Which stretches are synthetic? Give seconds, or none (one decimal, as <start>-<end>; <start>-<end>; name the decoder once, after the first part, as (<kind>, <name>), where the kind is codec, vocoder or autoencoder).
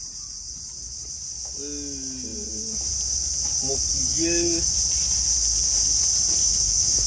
3.9-4.7 (autoencoder, DAC-VAE); 6.4-7.1